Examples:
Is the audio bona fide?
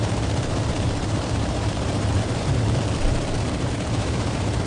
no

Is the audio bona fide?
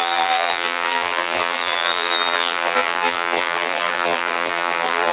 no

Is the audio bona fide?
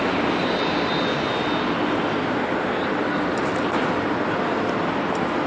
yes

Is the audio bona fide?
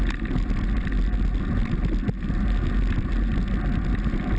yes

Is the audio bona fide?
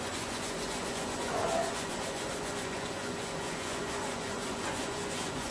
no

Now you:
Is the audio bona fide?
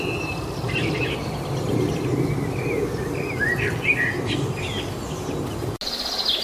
yes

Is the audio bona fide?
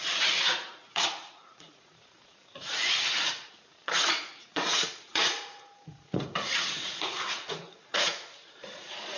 no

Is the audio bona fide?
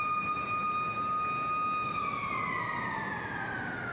yes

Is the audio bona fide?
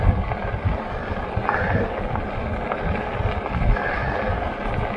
yes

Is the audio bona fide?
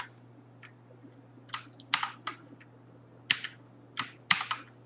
yes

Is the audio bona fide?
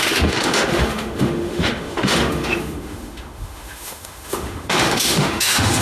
no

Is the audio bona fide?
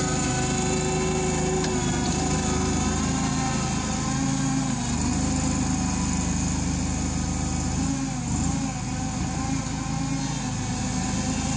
yes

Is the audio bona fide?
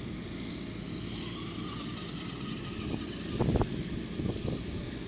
yes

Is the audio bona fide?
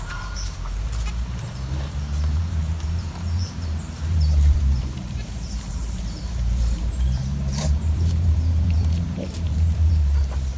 no